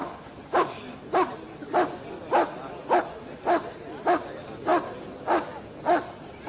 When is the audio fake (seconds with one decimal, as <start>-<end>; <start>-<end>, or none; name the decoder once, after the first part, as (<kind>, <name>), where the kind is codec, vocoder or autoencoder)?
none